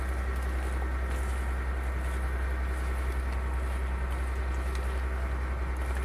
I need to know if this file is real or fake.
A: real